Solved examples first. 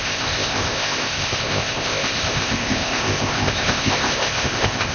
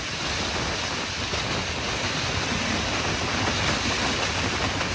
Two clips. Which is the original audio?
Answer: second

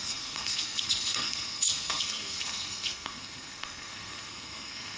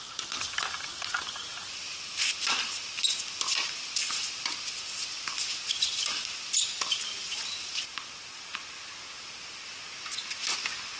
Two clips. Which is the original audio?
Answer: second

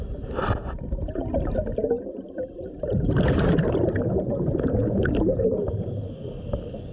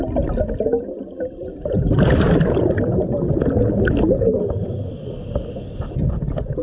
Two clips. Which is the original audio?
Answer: second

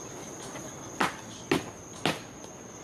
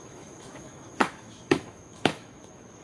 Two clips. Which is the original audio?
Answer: first